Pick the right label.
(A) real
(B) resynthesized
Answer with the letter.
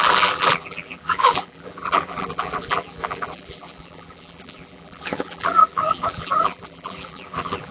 B